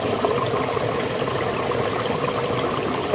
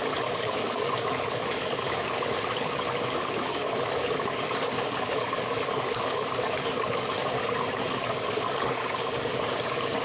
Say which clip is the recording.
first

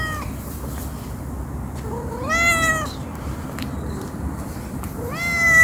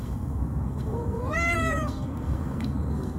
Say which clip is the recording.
first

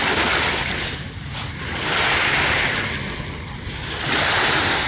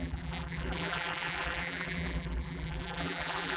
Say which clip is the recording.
first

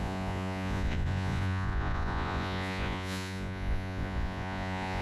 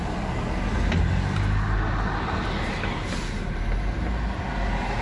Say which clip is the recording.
second